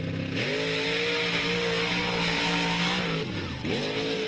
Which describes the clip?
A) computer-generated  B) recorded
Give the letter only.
B